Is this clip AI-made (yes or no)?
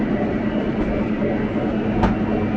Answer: no